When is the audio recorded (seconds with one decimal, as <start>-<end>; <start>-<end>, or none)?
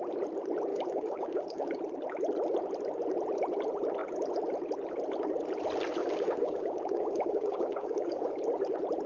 0.0-0.7; 1.7-6.0; 8.3-9.1